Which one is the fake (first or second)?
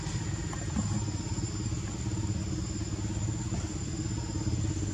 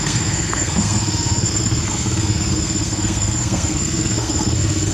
second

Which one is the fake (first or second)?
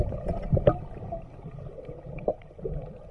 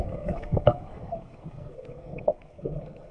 second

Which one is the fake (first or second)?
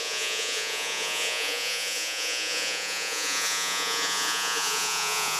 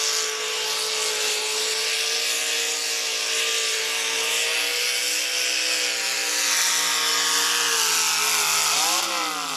first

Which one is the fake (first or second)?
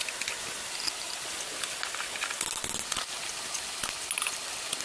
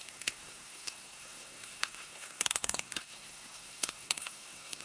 second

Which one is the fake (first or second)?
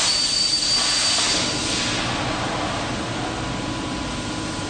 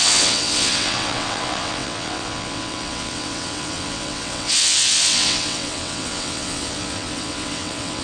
second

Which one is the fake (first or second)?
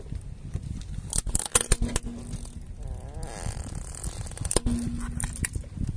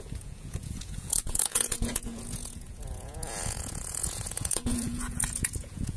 second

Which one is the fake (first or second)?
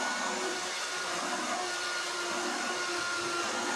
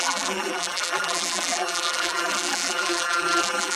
second